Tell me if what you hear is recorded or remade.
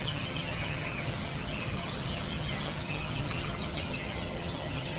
remade